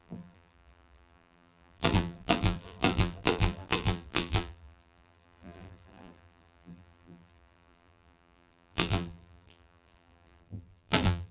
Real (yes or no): no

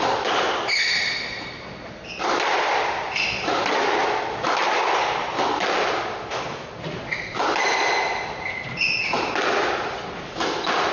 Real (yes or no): yes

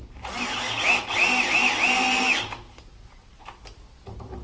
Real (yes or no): yes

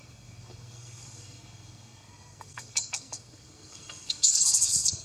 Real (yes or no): no